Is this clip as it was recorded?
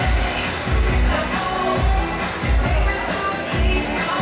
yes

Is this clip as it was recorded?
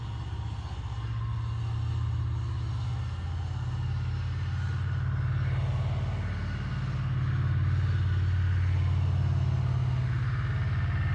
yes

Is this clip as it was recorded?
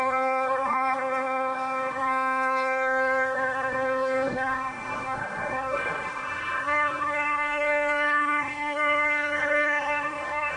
no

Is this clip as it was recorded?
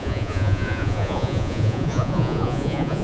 no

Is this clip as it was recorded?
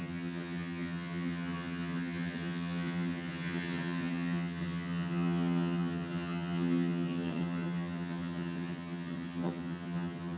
no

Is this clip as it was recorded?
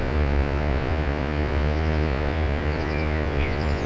no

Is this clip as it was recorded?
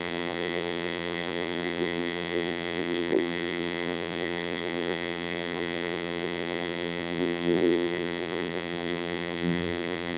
no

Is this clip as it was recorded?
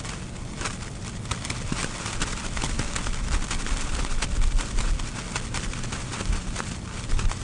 yes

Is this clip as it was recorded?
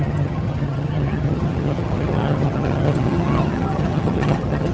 no